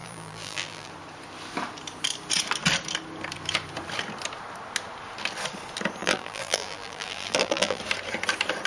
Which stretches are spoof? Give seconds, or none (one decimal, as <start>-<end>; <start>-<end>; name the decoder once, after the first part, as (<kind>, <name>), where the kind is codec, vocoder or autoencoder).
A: 0.0-0.9 (vocoder, BigVGAN v2); 6.0-7.8